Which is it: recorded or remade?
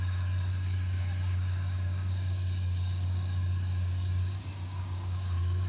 remade